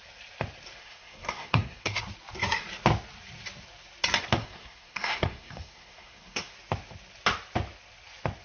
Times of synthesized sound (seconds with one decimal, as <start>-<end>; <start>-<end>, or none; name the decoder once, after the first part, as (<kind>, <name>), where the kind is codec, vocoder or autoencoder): 0.8-2.0 (codec, SNAC); 4.4-6.5